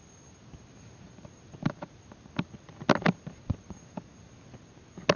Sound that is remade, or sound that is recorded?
recorded